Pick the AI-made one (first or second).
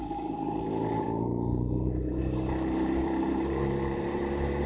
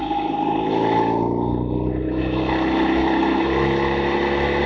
first